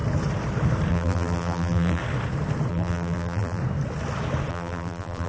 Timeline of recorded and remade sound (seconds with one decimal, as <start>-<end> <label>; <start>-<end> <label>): 0.0-0.9 recorded; 0.9-2.0 remade; 2.0-2.7 recorded; 2.7-3.6 remade; 3.6-4.5 recorded; 4.5-5.3 remade